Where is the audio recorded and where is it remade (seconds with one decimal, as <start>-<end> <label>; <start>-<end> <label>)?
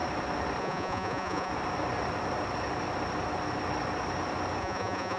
0.0-0.6 recorded; 0.6-1.5 remade; 1.5-4.6 recorded; 4.6-5.2 remade